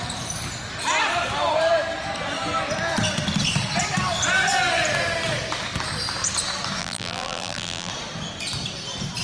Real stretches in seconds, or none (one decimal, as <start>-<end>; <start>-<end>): 0.0-6.8; 7.9-9.2